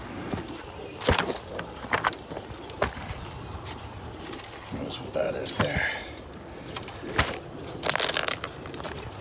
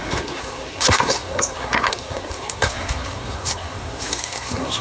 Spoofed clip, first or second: second